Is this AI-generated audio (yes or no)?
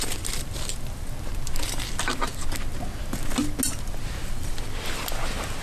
no